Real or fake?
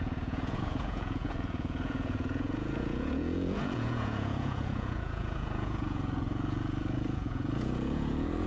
fake